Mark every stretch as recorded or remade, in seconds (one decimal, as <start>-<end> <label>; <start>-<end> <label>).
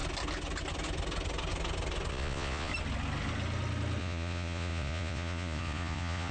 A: 0.0-2.1 recorded; 2.1-2.7 remade; 2.7-4.0 recorded; 4.0-6.3 remade